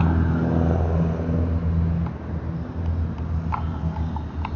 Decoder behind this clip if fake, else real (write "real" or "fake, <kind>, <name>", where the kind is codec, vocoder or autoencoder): real